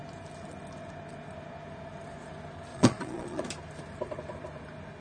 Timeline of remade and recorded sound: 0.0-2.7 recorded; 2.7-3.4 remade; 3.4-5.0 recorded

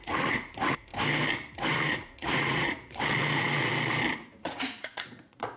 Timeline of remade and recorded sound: 0.0-0.9 remade; 0.9-1.7 recorded; 1.7-3.7 remade; 3.7-4.3 recorded; 4.3-5.6 remade

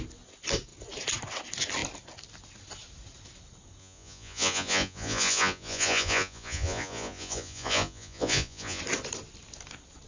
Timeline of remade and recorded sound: 0.0-3.8 recorded; 3.8-8.8 remade; 8.8-10.1 recorded